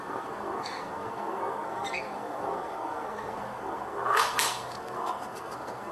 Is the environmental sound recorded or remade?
remade